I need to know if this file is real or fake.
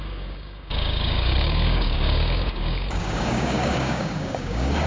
fake